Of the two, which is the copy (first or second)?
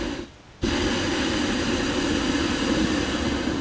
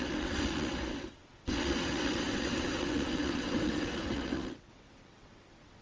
second